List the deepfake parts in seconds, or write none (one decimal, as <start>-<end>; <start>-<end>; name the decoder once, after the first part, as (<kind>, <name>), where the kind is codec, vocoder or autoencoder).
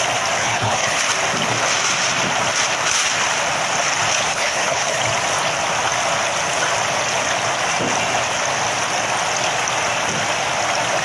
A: 0.4-1.0 (codec, HILCodec); 4.3-5.0